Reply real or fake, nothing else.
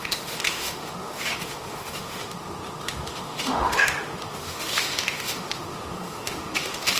fake